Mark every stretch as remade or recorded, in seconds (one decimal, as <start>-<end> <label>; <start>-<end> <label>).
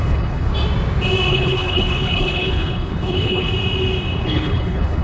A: 0.0-0.5 remade; 0.5-1.3 recorded; 1.3-3.5 remade; 3.5-4.2 recorded; 4.2-5.0 remade